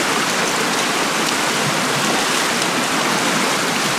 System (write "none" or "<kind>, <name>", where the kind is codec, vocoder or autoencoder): none